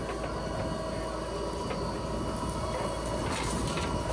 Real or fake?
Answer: real